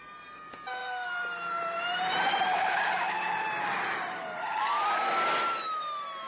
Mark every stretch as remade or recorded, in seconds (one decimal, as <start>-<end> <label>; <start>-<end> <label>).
0.0-0.8 recorded; 0.8-4.6 remade; 4.6-6.3 recorded